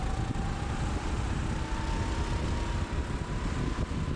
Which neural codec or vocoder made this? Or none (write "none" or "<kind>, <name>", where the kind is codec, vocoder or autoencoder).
none